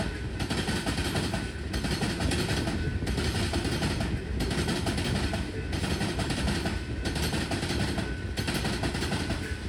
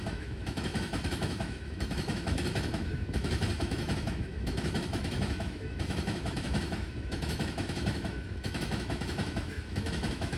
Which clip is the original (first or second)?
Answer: first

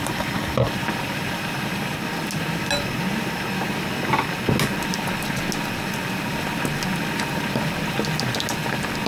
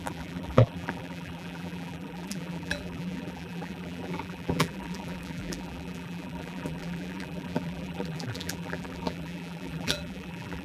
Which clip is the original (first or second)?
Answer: first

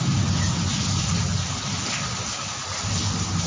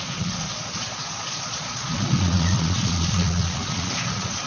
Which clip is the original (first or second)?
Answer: first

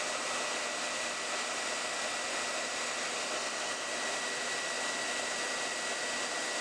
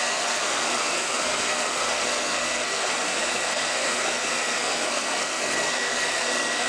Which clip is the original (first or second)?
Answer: first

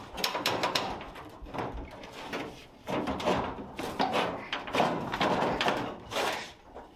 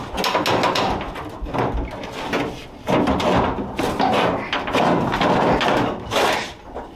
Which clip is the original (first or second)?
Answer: second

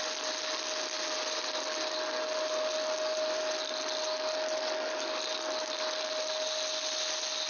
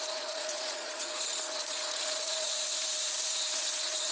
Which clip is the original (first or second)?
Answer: first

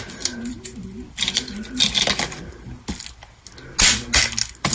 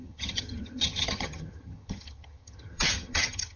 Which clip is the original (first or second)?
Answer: first